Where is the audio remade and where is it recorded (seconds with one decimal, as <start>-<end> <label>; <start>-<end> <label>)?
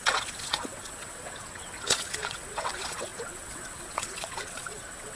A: 0.0-5.2 remade